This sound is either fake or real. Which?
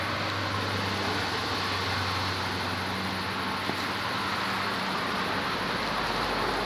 real